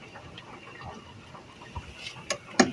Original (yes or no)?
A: yes